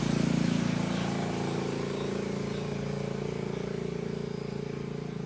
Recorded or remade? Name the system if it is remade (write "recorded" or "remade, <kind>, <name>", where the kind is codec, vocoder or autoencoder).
recorded